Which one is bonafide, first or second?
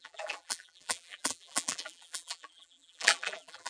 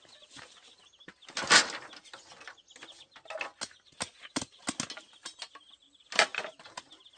second